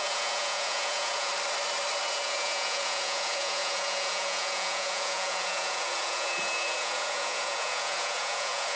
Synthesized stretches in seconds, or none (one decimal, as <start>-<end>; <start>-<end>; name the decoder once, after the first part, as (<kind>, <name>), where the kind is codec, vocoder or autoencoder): 0.0-1.3 (vocoder, Vocos); 2.1-8.8